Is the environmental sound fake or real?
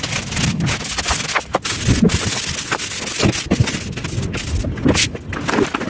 real